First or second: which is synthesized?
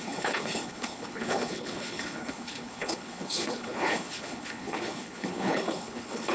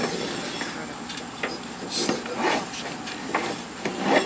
first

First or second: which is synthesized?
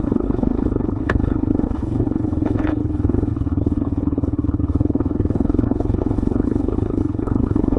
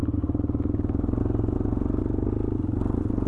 first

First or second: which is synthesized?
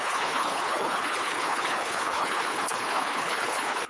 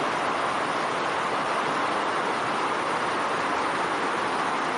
first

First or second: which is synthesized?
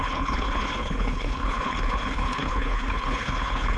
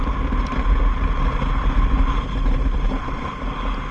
first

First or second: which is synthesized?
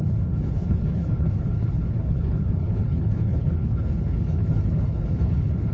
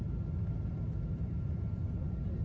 first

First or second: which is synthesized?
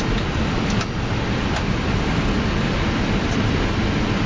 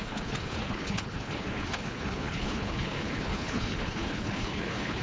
second